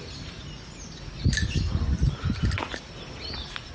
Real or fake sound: real